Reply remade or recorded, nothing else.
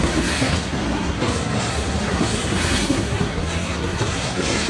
remade